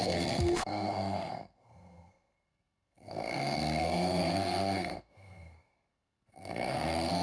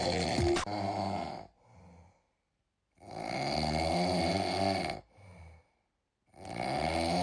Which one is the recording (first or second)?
second